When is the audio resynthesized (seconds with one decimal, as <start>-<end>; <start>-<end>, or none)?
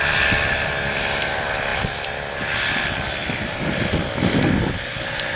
none